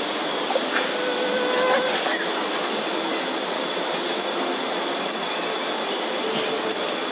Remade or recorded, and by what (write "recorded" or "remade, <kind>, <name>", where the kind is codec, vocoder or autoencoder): recorded